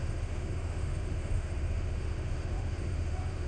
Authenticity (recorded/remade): remade